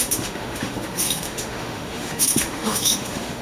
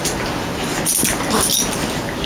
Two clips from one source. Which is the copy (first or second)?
first